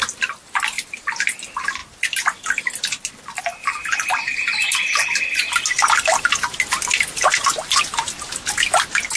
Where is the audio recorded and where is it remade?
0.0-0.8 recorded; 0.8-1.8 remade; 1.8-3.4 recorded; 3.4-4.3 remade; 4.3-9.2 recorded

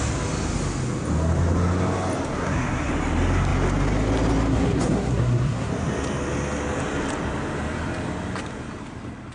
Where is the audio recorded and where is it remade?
0.0-2.4 recorded; 2.4-2.9 remade; 2.9-4.5 recorded; 4.5-5.7 remade; 5.7-9.3 recorded

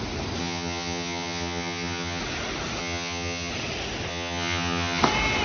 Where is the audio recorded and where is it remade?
0.0-0.4 recorded; 0.4-2.2 remade; 2.2-2.8 recorded; 2.8-3.5 remade; 3.5-4.1 recorded; 4.1-5.0 remade; 5.0-5.4 recorded

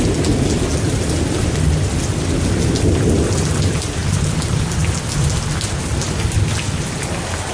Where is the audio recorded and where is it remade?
0.0-7.5 recorded